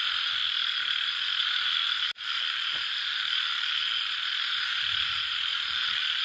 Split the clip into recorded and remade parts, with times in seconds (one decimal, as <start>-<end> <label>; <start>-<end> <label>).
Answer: 0.0-6.2 recorded